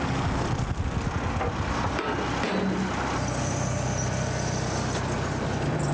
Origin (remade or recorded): recorded